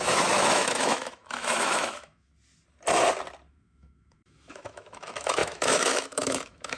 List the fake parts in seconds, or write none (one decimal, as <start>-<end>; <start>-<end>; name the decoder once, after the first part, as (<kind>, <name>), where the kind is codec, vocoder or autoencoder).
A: 0.0-2.3 (autoencoder, DAC-VAE); 3.5-6.8